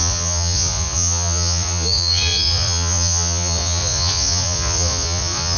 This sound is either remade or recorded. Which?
remade